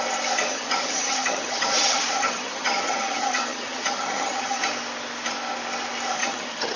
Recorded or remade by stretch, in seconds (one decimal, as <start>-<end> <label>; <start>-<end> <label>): 0.0-0.5 recorded; 0.5-4.6 remade; 4.6-6.2 recorded; 6.2-6.8 remade